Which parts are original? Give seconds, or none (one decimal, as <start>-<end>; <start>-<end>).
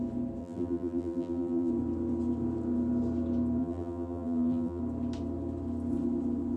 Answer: 0.0-0.4; 1.7-3.6; 4.8-6.6